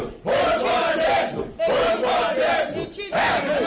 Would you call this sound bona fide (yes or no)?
yes